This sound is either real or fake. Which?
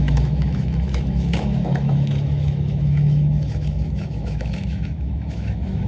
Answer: fake